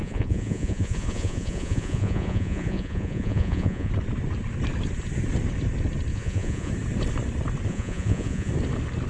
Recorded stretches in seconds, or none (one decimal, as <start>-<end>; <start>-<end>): 3.9-6.1; 6.7-7.7; 8.5-9.1